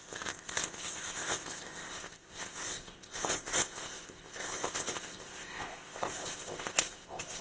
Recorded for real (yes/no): no